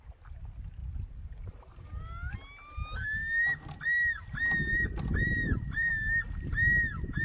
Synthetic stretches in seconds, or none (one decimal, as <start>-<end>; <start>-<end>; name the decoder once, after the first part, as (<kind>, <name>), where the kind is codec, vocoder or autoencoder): 0.8-2.0 (vocoder, BigVGAN v2); 4.7-5.9